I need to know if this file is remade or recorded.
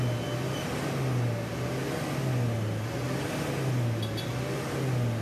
recorded